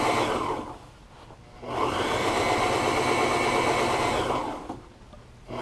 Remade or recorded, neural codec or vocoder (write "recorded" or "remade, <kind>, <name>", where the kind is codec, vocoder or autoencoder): recorded